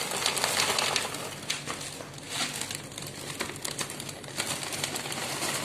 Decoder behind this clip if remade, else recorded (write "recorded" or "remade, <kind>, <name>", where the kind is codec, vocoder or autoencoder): recorded